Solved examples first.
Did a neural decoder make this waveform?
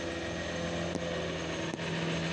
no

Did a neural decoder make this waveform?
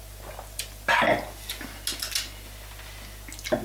no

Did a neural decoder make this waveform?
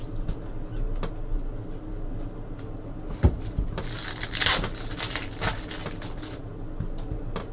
no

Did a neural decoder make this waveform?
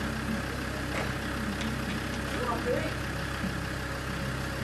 no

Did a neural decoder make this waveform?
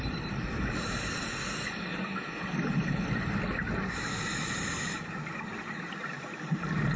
no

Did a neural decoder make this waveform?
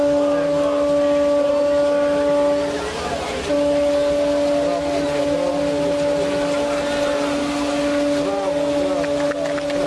no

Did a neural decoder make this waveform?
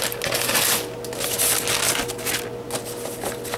no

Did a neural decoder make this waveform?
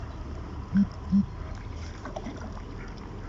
no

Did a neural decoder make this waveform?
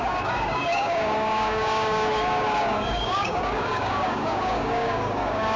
yes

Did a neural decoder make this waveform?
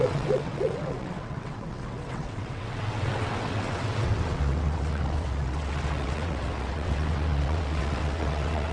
yes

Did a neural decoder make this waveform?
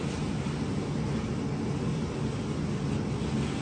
no